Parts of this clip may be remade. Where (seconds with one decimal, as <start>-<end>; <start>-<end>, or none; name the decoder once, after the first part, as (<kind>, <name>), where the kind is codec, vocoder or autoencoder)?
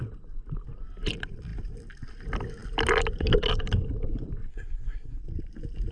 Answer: 4.5-5.2 (codec, SNAC)